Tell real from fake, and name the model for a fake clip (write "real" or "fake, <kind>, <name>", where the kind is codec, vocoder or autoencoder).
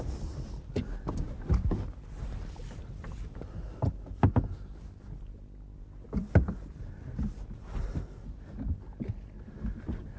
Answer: real